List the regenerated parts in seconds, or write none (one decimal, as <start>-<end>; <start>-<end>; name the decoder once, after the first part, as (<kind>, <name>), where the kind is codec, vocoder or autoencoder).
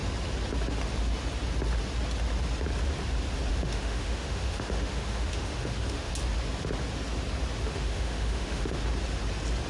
3.5-6.1 (autoencoder, DAC-VAE); 7.6-8.8